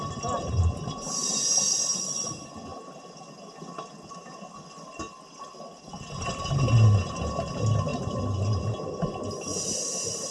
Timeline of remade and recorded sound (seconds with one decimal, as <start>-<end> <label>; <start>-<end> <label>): 0.0-10.3 recorded